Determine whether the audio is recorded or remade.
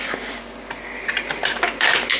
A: recorded